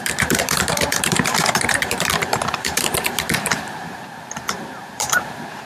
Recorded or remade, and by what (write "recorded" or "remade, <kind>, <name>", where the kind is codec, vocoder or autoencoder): remade, vocoder, BigVGAN v2